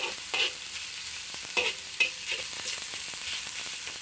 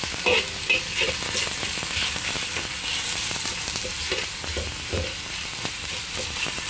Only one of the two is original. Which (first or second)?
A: second